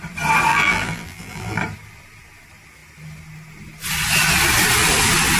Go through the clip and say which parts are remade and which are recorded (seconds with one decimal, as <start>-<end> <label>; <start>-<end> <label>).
0.0-0.5 recorded; 0.5-1.6 remade; 1.6-5.4 recorded